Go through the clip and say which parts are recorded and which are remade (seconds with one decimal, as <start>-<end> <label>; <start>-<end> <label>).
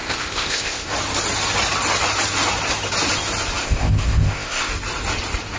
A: 0.0-0.9 remade; 0.9-3.6 recorded; 3.6-4.7 remade; 4.7-5.6 recorded